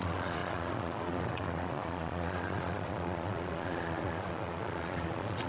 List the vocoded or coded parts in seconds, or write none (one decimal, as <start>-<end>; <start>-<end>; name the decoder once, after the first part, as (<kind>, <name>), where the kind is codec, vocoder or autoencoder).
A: 0.0-5.5 (vocoder, Vocos)